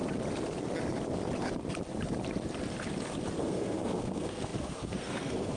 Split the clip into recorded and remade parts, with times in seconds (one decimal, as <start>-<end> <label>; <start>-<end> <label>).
0.0-3.4 recorded; 3.4-5.6 remade